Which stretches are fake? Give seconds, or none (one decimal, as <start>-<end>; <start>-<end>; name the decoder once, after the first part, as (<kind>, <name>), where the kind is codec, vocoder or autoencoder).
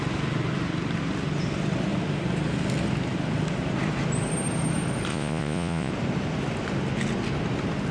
5.1-5.9 (vocoder, Vocos)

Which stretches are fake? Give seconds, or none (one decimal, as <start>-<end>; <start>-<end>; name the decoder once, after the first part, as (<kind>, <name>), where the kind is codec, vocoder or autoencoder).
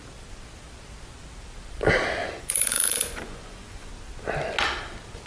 2.2-3.9 (vocoder, Vocos)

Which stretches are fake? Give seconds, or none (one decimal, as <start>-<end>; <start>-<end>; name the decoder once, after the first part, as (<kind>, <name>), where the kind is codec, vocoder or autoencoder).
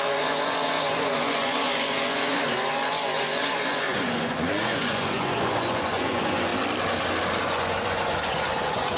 0.0-6.5 (vocoder, Vocos); 7.4-9.0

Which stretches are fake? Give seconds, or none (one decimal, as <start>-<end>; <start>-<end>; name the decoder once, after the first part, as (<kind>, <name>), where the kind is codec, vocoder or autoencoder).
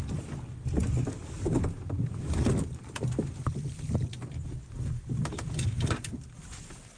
none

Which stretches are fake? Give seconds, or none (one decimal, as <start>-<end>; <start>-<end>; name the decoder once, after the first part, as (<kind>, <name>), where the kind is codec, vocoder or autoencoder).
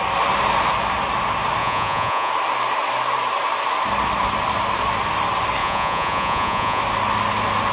1.6-2.3 (vocoder, Vocos); 5.6-6.8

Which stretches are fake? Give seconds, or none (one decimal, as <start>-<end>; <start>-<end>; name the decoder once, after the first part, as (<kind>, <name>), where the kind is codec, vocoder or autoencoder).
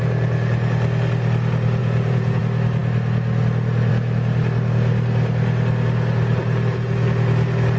1.8-2.4 (vocoder, Vocos)